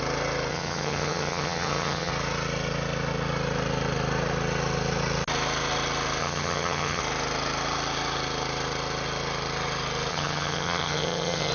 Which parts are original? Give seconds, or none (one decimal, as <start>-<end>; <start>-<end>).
0.0-0.5; 2.1-6.2; 7.0-10.1